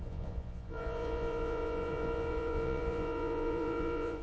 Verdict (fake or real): fake